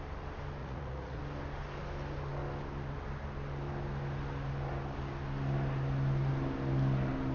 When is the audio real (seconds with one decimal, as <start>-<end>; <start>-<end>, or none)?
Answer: 0.0-0.6; 1.2-7.3